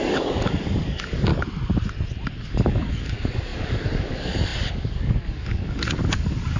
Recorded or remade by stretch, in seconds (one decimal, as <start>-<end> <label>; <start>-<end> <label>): 0.0-1.3 remade; 1.3-2.4 recorded; 2.4-6.6 remade

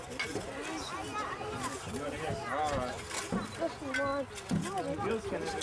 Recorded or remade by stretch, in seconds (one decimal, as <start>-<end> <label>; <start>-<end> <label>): 0.0-5.6 recorded

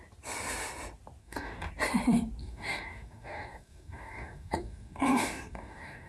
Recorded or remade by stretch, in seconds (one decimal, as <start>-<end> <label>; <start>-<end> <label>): 0.0-1.2 recorded; 1.2-1.7 remade; 1.7-2.4 recorded; 2.4-6.1 remade

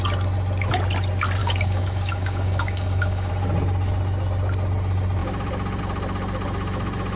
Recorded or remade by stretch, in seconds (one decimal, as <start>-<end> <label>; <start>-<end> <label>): 0.0-1.4 recorded; 1.4-3.3 remade; 3.3-7.2 recorded

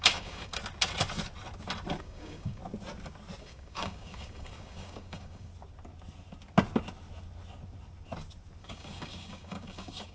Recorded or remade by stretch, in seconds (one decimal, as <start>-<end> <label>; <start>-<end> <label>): 0.0-0.6 remade; 0.6-2.0 recorded; 2.0-2.6 remade; 2.6-3.4 recorded; 3.4-5.5 remade; 5.5-8.6 recorded; 8.6-10.1 remade